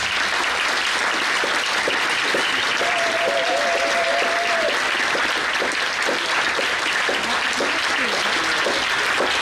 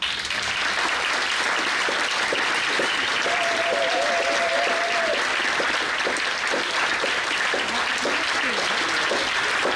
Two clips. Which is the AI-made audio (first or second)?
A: second